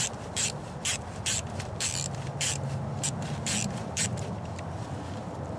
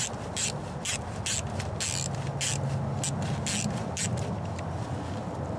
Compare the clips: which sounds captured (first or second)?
second